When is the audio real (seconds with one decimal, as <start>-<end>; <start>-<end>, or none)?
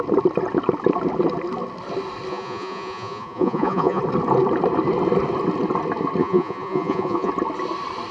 0.0-2.3; 4.0-6.2; 7.3-8.1